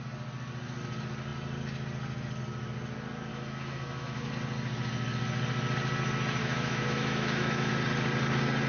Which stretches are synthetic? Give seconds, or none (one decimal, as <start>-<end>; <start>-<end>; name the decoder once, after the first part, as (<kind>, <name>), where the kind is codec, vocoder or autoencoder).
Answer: 3.3-4.3 (autoencoder, DAC-VAE); 6.4-7.7